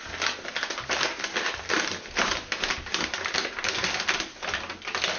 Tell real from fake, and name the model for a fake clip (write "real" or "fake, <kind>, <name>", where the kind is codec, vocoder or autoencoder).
real